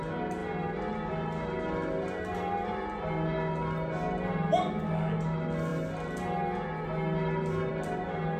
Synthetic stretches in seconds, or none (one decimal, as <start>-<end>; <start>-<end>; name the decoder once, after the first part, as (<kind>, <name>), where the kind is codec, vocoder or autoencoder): none